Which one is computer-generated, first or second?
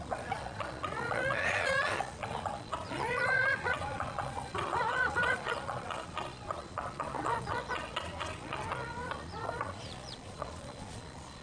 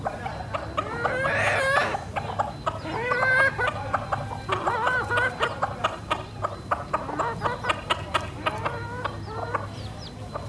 first